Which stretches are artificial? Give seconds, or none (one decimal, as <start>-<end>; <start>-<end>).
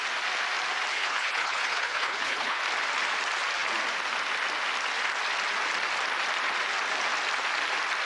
0.9-2.6